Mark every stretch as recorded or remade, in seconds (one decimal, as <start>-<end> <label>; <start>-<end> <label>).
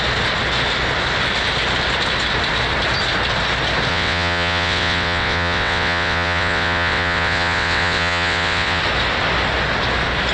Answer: 0.0-3.9 recorded; 3.9-8.8 remade; 8.8-10.3 recorded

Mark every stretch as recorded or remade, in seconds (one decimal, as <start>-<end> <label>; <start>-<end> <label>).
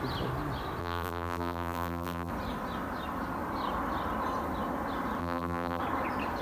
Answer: 0.0-0.8 recorded; 0.8-2.3 remade; 2.3-5.2 recorded; 5.2-5.8 remade; 5.8-6.4 recorded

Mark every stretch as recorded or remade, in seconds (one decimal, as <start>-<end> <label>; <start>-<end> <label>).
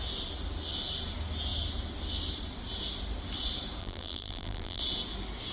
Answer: 0.0-3.8 recorded; 3.8-4.8 remade; 4.8-5.5 recorded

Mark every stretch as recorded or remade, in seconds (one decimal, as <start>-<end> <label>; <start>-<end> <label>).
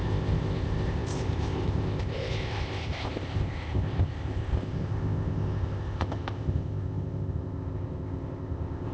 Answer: 0.0-8.9 remade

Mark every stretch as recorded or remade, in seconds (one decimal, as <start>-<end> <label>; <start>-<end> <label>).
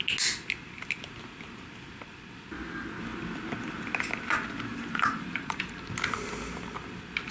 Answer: 0.0-4.7 recorded; 4.7-5.7 remade; 5.7-7.3 recorded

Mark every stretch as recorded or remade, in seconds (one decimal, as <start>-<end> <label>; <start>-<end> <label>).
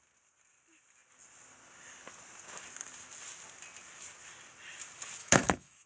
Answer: 0.0-5.2 recorded; 5.2-5.9 remade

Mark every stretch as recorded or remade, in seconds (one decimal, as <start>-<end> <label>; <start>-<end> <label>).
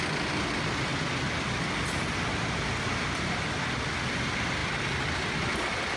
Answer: 0.0-6.0 recorded